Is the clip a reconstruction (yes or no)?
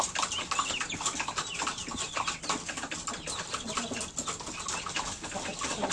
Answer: no